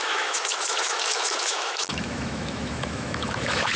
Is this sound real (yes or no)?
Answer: no